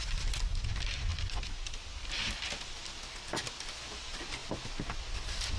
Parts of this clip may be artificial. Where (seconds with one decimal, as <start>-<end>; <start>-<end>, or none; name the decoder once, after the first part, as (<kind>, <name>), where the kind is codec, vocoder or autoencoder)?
none